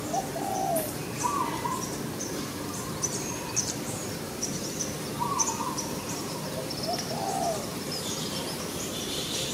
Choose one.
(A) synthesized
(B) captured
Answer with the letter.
A